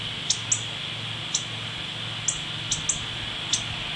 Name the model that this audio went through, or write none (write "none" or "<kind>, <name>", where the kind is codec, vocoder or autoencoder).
none